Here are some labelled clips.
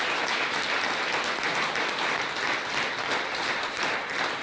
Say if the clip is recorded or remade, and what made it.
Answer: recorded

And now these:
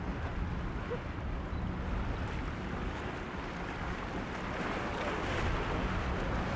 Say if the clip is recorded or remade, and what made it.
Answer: recorded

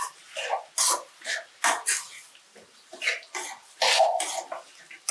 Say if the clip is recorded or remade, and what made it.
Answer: recorded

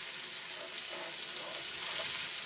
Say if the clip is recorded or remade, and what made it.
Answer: recorded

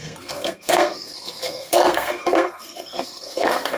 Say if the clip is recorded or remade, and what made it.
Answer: remade, codec, SNAC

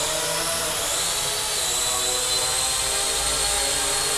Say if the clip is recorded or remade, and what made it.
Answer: recorded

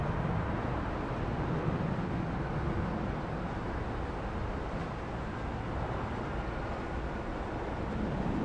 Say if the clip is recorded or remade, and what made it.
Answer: recorded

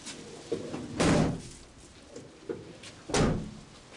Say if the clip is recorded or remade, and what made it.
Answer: recorded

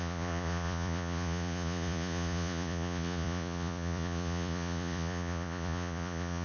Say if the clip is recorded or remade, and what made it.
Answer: remade, vocoder, Vocos